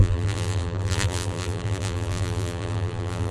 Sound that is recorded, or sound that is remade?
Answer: remade